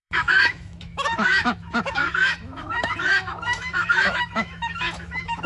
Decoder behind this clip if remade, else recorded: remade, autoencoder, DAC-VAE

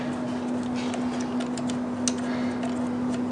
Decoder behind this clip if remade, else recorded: recorded